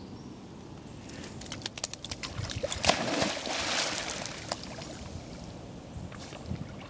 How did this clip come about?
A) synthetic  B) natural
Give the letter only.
B